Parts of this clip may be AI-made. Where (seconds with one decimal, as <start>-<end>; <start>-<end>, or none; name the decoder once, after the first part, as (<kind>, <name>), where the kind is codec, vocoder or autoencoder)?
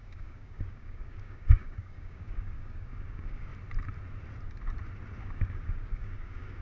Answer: 0.0-3.5 (codec, DAC); 5.2-6.6